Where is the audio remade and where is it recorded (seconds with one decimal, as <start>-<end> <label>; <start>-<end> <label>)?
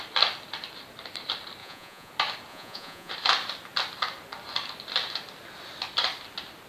0.0-1.6 recorded; 1.6-2.1 remade; 2.1-2.5 recorded; 2.5-3.1 remade; 3.1-6.7 recorded